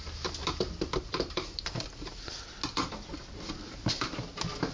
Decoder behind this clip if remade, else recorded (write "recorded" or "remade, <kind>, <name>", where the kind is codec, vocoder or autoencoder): recorded